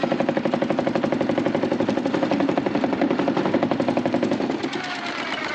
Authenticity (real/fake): real